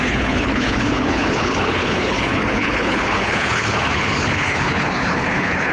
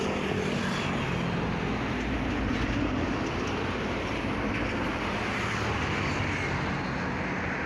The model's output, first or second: first